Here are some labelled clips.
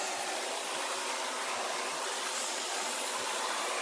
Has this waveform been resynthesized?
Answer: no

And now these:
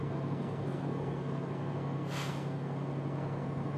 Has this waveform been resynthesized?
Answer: yes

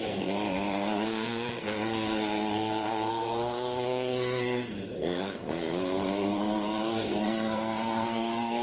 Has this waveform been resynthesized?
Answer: yes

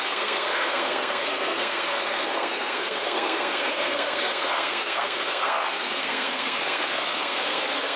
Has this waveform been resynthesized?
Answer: yes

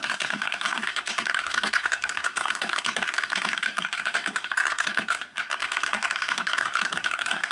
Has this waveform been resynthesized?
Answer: yes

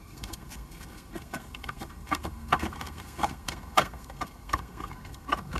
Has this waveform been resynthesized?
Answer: yes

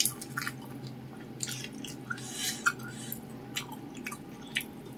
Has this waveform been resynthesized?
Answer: no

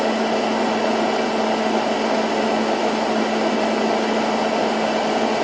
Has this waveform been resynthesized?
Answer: no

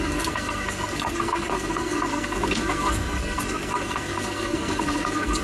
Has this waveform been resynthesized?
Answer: yes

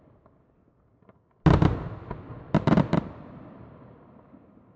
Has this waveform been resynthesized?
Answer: no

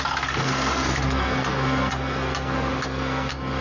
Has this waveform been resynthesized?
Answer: yes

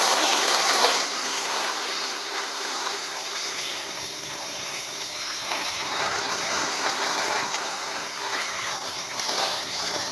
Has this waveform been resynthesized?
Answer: yes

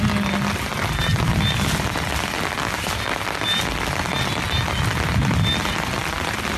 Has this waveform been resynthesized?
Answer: no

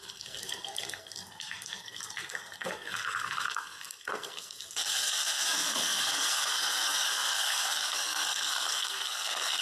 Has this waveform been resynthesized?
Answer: yes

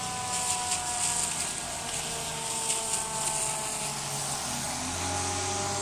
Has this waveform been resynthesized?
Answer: no